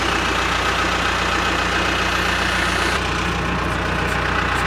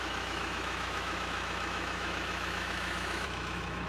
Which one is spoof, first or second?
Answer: second